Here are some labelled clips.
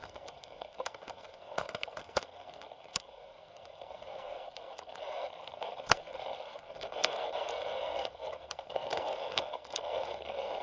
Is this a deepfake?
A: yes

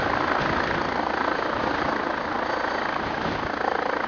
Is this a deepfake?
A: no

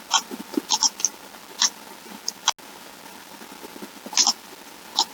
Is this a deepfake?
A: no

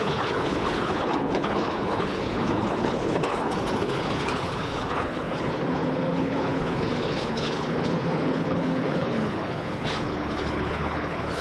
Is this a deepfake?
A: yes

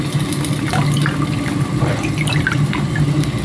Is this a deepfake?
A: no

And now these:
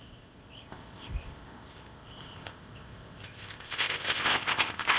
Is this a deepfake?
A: yes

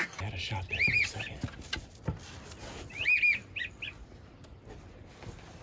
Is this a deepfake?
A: no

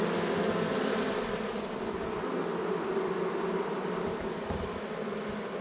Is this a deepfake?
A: no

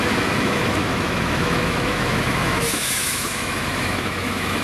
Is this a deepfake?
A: yes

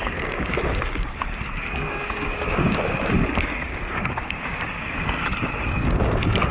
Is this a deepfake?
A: yes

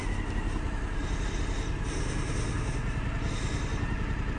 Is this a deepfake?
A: no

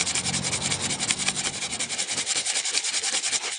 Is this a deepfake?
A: no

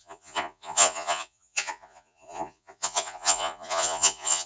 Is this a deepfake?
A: yes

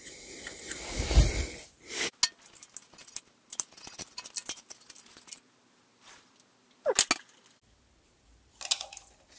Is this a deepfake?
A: no